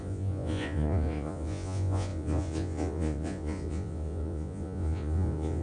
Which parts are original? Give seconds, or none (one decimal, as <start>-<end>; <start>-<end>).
none